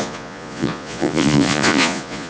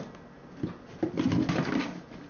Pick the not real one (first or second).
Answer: first